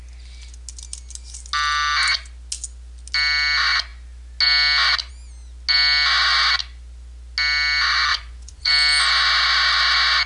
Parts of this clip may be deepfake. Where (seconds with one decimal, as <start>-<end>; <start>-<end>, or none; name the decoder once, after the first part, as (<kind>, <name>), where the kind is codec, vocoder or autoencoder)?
8.1-8.7 (vocoder, Vocos)